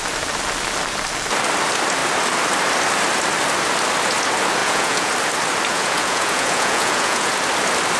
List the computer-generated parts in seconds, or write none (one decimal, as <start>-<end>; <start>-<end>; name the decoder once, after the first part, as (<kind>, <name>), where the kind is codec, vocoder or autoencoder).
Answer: 4.6-5.1 (vocoder, Vocos); 5.7-7.3